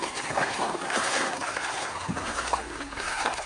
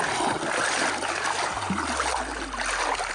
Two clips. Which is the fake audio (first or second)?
first